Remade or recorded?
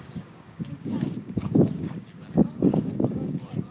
remade